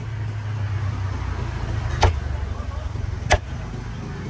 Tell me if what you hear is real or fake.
real